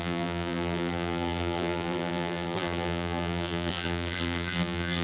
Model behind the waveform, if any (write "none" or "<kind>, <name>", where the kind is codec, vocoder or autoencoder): vocoder, BigVGAN v2